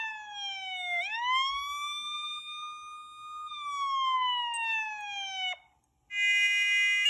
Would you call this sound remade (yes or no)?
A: no